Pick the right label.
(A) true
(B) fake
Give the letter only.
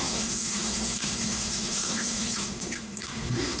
B